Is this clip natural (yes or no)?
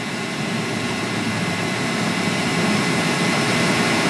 no